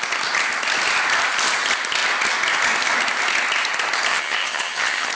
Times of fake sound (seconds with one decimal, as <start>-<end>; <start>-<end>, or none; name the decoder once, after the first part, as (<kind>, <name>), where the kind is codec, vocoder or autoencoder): 4.1-5.1 (vocoder, HiFi-GAN)